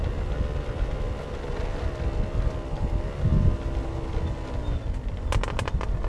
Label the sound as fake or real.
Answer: real